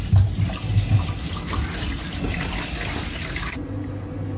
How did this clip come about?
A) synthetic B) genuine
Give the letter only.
B